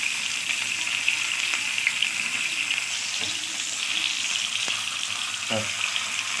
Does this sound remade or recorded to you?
recorded